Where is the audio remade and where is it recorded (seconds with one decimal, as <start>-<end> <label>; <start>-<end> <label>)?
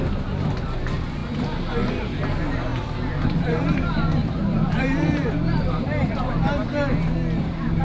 0.0-2.7 recorded; 2.7-6.3 remade; 6.3-7.8 recorded